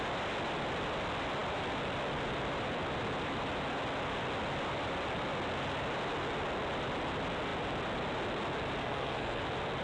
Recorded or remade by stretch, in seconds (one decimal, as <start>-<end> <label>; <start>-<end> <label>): 0.0-8.8 recorded; 8.8-9.4 remade; 9.4-9.8 recorded